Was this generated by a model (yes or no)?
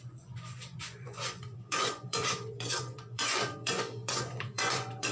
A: yes